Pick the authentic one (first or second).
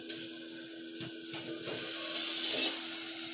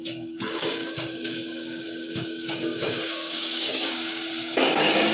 first